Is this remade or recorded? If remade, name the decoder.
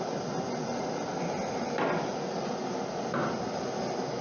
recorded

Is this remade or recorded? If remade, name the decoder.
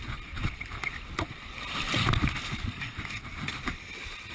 recorded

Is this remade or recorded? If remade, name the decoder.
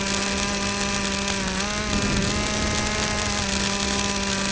recorded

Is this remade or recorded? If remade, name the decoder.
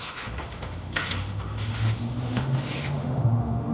remade, autoencoder, DAC-VAE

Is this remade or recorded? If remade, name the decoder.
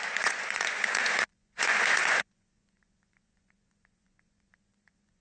remade, vocoder, Vocos